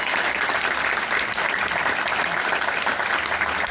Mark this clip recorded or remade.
recorded